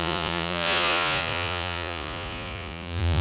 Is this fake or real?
fake